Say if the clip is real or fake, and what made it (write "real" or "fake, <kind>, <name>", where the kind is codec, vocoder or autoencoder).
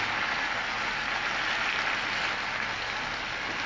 real